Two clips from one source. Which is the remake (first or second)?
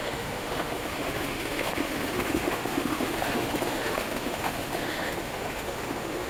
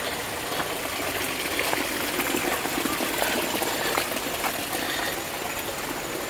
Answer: first